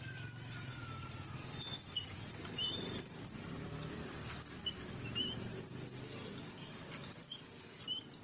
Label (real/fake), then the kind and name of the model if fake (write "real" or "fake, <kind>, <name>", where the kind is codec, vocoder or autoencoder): real